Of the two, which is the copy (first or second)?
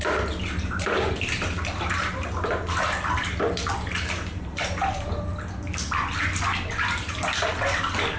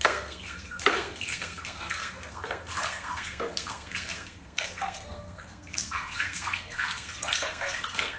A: second